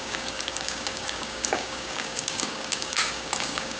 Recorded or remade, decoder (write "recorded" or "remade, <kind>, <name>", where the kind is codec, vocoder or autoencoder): remade, codec, DAC